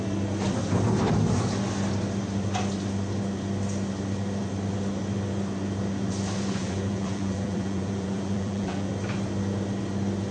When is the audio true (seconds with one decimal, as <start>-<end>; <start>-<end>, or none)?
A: 0.0-6.6; 8.9-10.3